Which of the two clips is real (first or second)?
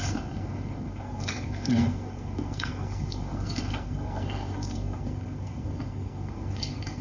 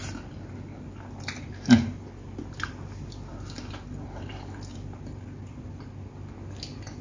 second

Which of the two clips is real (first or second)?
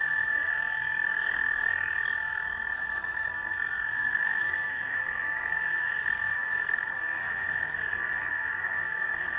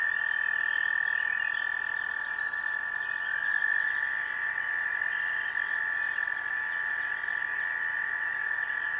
second